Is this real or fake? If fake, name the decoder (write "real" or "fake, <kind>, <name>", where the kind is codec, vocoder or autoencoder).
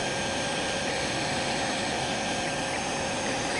real